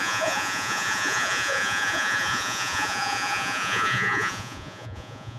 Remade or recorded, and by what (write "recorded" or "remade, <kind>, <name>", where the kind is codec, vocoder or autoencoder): remade, vocoder, Vocos